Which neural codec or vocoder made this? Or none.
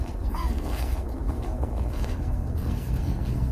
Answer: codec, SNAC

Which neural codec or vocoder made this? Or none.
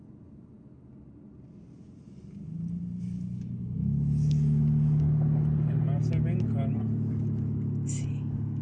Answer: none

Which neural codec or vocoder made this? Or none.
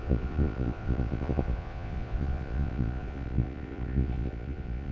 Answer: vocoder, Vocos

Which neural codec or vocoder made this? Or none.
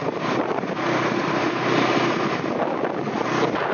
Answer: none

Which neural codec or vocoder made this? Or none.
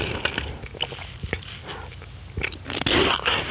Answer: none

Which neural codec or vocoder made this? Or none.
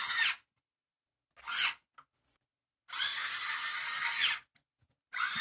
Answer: none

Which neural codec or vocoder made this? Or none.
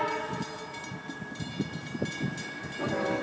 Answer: none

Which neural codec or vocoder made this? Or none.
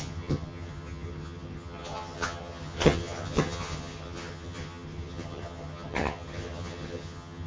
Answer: vocoder, HiFi-GAN